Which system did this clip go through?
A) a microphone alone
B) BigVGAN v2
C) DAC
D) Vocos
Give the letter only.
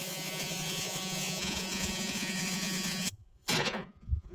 D